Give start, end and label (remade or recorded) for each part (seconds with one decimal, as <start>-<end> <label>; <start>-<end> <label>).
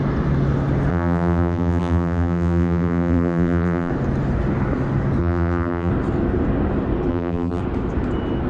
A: 0.0-0.9 recorded; 0.9-3.9 remade; 3.9-5.2 recorded; 5.2-5.9 remade; 5.9-7.1 recorded; 7.1-7.6 remade; 7.6-8.5 recorded